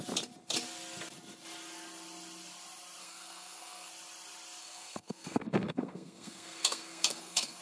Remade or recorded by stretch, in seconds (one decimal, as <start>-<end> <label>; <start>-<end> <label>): 0.0-3.0 recorded; 3.0-3.9 remade; 3.9-4.6 recorded; 4.6-7.6 remade